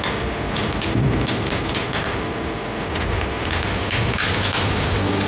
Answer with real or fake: real